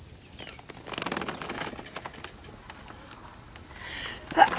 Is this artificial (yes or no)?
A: no